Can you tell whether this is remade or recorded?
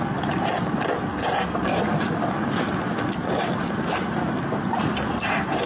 recorded